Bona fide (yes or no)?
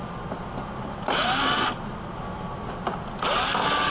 yes